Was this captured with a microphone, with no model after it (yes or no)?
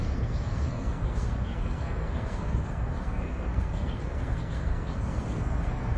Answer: no